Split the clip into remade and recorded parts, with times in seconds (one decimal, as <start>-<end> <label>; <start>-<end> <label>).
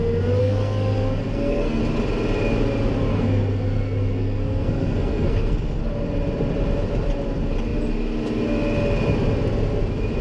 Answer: 0.0-0.4 recorded; 0.4-1.8 remade; 1.8-3.1 recorded; 3.1-5.8 remade; 5.8-10.2 recorded